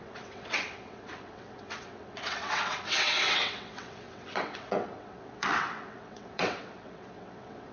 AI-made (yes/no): yes